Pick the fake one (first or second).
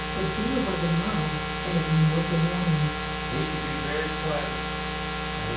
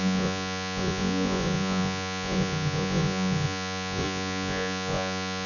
second